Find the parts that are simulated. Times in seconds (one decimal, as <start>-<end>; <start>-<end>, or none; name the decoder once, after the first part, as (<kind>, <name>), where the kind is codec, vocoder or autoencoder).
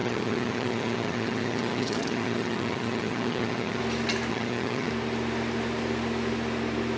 0.0-3.8 (vocoder, HiFi-GAN); 4.3-4.9